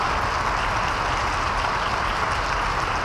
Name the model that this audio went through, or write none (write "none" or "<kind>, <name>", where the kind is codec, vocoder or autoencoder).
none